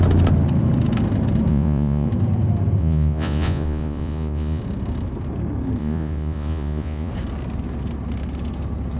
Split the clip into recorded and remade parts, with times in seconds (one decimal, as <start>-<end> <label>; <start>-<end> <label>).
0.0-1.5 recorded; 1.5-2.1 remade; 2.1-2.8 recorded; 2.8-4.6 remade; 4.6-5.8 recorded; 5.8-7.1 remade; 7.1-9.0 recorded